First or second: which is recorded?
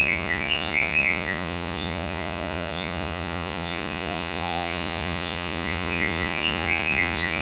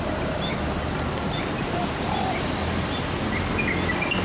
second